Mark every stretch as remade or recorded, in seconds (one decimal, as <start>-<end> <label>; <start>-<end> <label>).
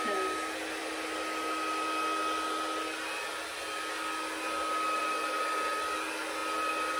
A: 0.0-7.0 recorded